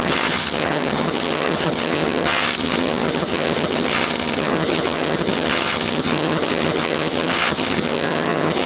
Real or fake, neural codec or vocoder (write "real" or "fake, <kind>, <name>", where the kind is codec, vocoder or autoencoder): fake, vocoder, HiFi-GAN